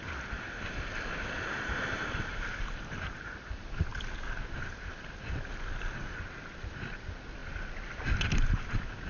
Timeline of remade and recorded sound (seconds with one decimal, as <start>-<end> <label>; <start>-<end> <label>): 0.0-9.1 recorded